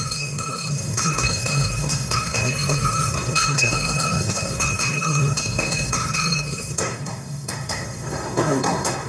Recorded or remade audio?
remade